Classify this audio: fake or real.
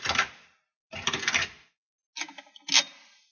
real